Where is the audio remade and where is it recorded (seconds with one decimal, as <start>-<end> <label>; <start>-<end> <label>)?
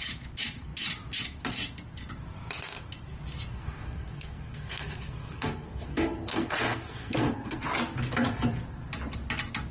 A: 0.0-3.5 recorded; 3.5-7.6 remade; 7.6-9.7 recorded